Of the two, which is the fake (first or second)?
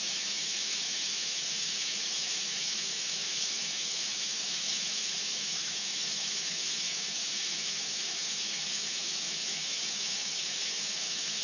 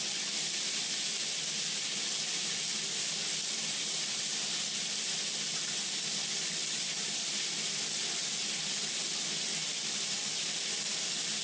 first